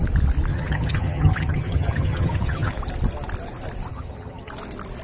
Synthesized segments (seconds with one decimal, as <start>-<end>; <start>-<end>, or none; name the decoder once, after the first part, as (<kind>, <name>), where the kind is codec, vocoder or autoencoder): 0.5-2.7 (vocoder, HiFi-GAN); 3.9-4.5